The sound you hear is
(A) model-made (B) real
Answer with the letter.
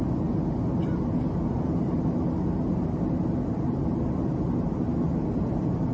B